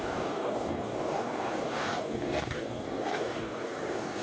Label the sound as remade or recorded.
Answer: remade